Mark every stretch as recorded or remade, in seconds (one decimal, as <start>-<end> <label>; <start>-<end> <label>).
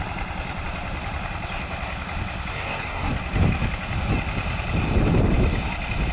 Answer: 0.0-2.5 recorded; 2.5-3.1 remade; 3.1-6.1 recorded